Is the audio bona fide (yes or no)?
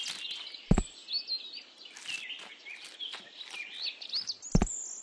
yes